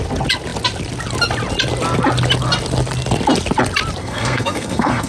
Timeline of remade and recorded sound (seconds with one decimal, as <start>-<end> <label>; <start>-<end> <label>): 0.0-4.0 recorded; 4.0-5.1 remade